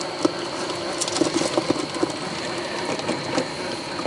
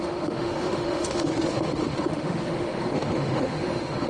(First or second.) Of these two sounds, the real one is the first